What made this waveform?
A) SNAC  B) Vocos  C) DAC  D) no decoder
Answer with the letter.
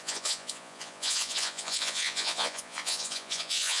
B